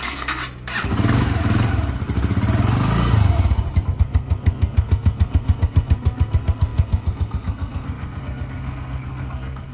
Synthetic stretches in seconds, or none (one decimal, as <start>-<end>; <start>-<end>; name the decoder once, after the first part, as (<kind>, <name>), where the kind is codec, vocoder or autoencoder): 0.0-0.4 (codec, SNAC); 4.0-9.7